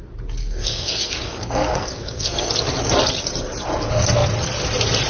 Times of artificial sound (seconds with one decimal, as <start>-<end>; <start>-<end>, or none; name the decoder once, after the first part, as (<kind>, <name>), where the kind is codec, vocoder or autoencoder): 0.4-2.5 (codec, SNAC)